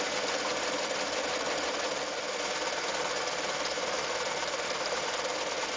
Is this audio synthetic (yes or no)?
yes